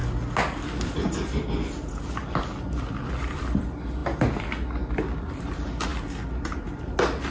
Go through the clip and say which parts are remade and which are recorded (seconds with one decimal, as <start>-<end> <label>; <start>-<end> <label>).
0.0-2.4 recorded; 2.4-4.0 remade; 4.0-5.4 recorded; 5.4-5.9 remade; 5.9-7.3 recorded